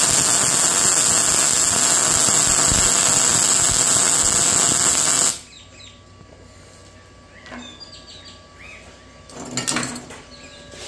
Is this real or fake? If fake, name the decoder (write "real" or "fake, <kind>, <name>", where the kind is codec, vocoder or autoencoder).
real